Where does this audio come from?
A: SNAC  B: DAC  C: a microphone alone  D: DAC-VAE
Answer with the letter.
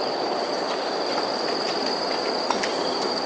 C